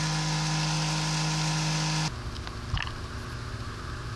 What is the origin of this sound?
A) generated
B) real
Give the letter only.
B